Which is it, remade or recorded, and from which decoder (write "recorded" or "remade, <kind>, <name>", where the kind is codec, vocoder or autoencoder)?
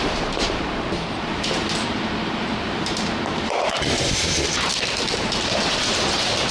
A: remade, vocoder, BigVGAN v2